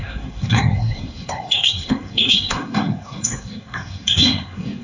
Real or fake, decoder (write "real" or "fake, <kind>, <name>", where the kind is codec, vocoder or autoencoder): fake, codec, SNAC